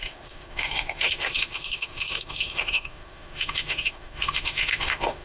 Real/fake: fake